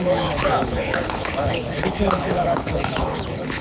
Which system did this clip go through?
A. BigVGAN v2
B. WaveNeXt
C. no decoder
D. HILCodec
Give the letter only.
D